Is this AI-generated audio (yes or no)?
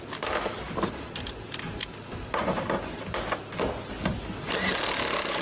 no